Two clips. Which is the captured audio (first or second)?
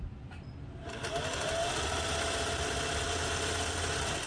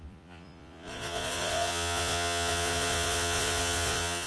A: first